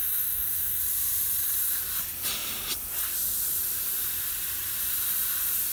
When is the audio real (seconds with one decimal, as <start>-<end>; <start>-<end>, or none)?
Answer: 0.8-5.7